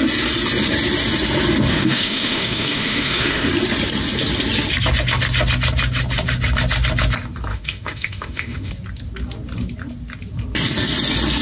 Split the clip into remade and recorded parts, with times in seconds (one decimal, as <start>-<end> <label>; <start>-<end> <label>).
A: 0.0-1.7 recorded; 1.7-3.5 remade; 3.5-7.5 recorded; 7.5-8.7 remade; 8.7-11.4 recorded